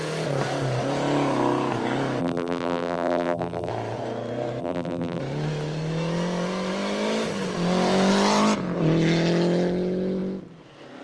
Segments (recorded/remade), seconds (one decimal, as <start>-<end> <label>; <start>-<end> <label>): 0.0-2.2 recorded; 2.2-3.7 remade; 3.7-4.6 recorded; 4.6-5.2 remade; 5.2-11.0 recorded